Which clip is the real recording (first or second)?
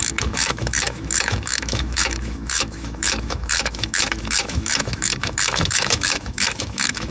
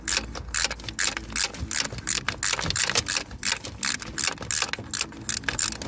second